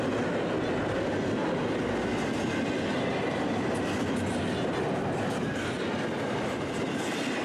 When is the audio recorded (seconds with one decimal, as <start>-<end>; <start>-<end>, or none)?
0.0-7.4